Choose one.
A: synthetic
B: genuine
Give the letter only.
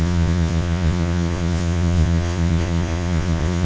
A